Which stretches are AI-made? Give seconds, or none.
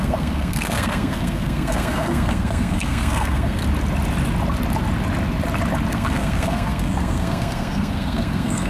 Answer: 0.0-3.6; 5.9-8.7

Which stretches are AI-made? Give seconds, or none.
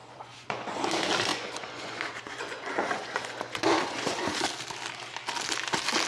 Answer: 0.0-0.8; 1.3-4.4